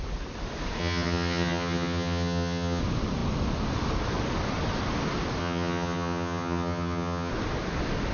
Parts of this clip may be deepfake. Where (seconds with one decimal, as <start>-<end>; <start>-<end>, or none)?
0.8-2.8; 5.4-7.3